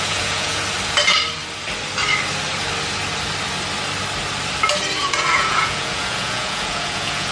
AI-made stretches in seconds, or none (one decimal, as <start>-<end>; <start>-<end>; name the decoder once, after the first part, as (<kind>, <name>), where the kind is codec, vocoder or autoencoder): 0.0-0.6 (vocoder, Vocos); 5.0-7.3